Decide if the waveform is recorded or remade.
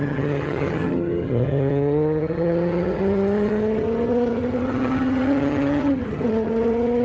remade